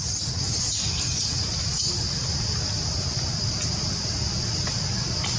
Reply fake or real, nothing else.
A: real